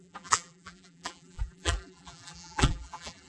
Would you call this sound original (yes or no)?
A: no